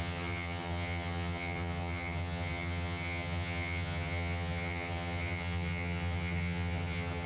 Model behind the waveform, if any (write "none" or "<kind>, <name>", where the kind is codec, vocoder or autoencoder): vocoder, HiFi-GAN